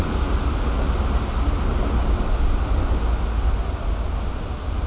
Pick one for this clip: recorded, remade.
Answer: recorded